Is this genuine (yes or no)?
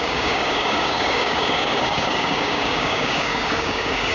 no